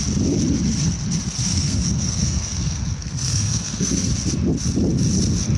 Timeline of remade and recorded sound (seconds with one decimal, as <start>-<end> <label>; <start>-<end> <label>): 0.0-1.5 recorded; 1.5-4.1 remade; 4.1-5.6 recorded